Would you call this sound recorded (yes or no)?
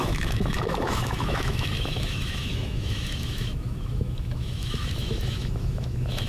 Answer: no